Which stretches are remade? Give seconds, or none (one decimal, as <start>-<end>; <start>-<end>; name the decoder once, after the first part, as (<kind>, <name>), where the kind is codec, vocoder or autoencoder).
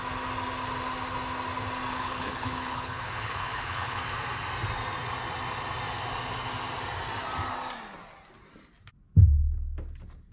1.9-4.0 (codec, HILCodec)